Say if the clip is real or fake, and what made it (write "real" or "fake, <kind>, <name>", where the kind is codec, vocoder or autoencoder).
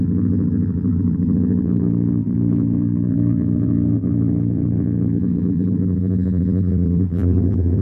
fake, vocoder, BigVGAN v2